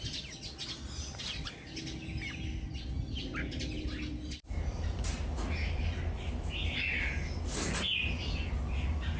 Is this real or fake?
real